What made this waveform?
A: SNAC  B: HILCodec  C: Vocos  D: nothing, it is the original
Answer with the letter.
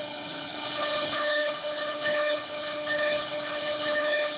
B